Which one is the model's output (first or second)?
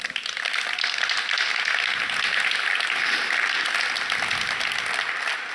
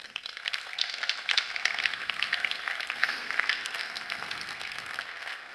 second